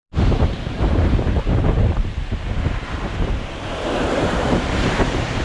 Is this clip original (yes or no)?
no